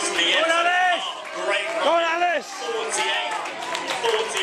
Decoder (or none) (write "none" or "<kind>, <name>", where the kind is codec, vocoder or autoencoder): vocoder, BigVGAN v2